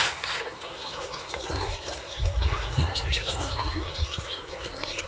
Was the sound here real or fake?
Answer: fake